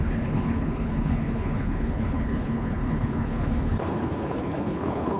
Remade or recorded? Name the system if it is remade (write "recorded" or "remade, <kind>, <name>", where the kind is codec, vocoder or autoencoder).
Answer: remade, codec, HILCodec